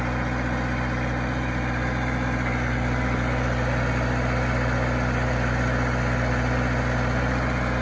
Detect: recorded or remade recorded